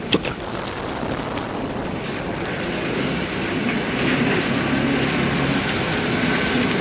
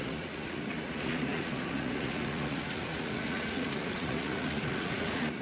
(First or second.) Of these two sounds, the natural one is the first